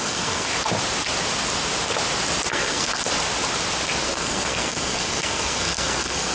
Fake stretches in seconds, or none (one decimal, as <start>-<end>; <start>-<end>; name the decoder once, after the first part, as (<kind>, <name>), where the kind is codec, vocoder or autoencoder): 0.0-0.5 (codec, SNAC); 2.5-2.9; 4.0-6.3